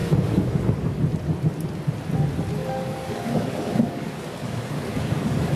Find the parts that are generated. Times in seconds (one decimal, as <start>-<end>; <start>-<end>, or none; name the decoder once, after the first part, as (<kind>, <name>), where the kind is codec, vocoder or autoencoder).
0.0-1.0 (codec, DAC); 2.6-5.6